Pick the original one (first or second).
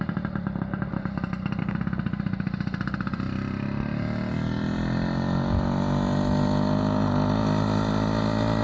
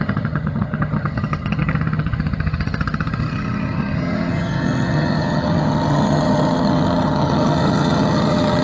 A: first